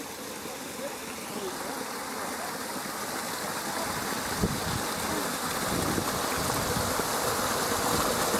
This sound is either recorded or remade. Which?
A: recorded